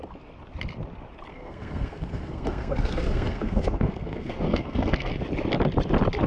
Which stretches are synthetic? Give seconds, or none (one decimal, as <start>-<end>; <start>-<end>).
1.3-5.1